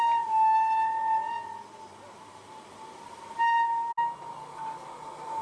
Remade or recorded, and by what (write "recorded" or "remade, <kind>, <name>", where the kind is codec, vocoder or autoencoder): recorded